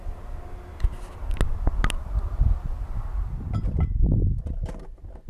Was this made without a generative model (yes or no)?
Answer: yes